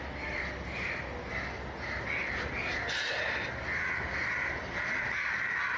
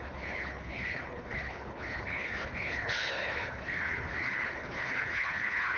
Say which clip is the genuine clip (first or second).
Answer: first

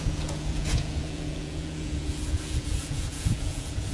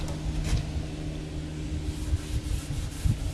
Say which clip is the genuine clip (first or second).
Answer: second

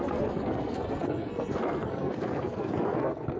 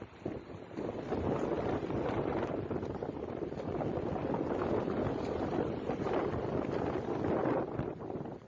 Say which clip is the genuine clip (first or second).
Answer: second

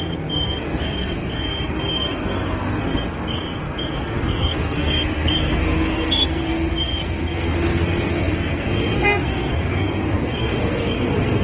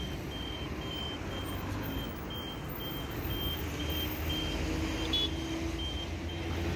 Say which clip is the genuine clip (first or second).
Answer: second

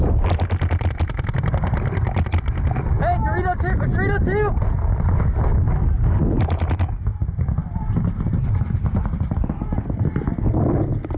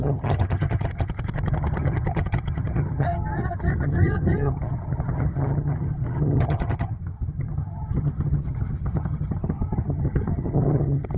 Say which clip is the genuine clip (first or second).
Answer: first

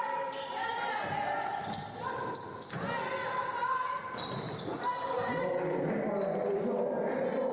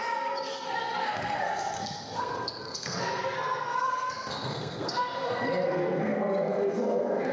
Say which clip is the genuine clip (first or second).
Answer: first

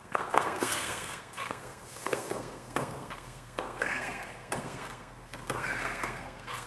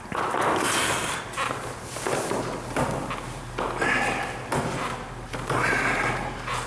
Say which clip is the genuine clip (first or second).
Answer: second